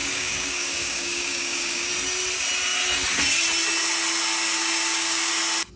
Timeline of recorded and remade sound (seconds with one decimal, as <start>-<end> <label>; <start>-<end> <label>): 0.0-1.9 remade; 1.9-4.6 recorded; 4.6-5.3 remade; 5.3-5.8 recorded